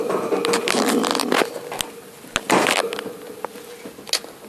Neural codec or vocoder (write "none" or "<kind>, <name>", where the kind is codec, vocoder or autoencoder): none